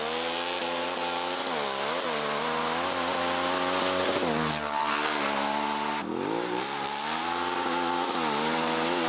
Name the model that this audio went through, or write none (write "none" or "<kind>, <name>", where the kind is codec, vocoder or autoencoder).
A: none